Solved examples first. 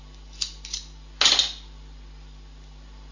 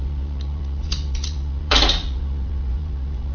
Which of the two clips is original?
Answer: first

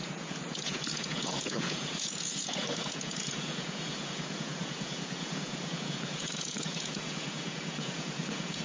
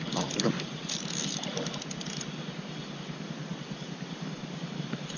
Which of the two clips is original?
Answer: second